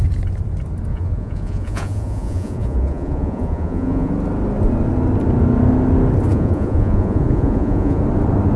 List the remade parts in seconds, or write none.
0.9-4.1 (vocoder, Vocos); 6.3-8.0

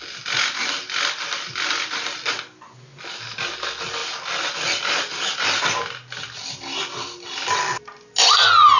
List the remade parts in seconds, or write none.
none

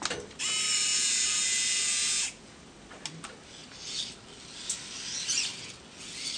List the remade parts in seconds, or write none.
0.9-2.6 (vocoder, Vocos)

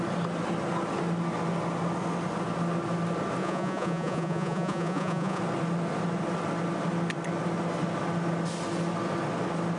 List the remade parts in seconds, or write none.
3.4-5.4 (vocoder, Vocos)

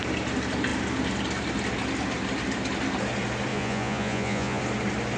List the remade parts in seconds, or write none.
3.5-4.6 (vocoder, Vocos)

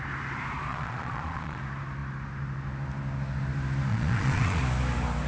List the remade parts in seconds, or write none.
0.7-1.6 (vocoder, Vocos); 3.9-4.6